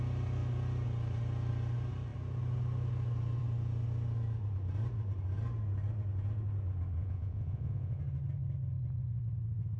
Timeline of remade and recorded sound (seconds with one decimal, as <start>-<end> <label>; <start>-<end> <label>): 0.0-7.0 recorded; 7.0-8.0 remade; 8.0-9.8 recorded